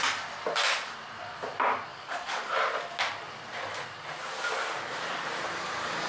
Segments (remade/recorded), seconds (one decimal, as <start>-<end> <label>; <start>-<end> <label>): 0.0-1.9 recorded; 1.9-2.5 remade; 2.5-6.1 recorded